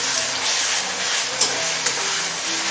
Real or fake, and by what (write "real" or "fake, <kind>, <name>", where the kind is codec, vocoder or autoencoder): real